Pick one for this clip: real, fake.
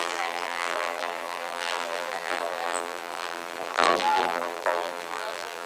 fake